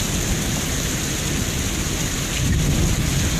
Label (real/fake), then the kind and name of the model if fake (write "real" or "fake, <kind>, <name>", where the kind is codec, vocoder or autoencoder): fake, vocoder, BigVGAN v2